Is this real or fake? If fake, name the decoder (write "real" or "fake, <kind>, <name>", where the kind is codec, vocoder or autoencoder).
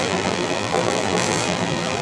fake, vocoder, BigVGAN v2